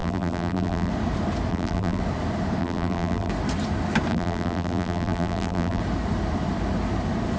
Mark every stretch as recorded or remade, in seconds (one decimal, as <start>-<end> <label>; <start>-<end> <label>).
0.0-0.9 remade; 0.9-1.5 recorded; 1.5-2.0 remade; 2.0-2.6 recorded; 2.6-3.3 remade; 3.3-4.1 recorded; 4.1-5.8 remade; 5.8-7.4 recorded